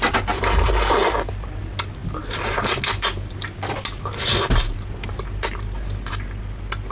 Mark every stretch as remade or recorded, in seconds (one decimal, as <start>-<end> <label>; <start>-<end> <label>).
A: 0.0-6.9 recorded